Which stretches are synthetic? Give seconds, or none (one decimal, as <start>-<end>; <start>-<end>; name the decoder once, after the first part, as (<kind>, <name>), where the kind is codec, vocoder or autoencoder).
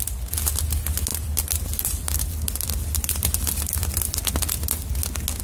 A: 1.1-3.9 (vocoder, BigVGAN v2)